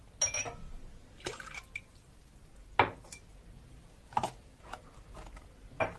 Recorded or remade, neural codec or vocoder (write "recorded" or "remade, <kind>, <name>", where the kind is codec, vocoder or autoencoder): recorded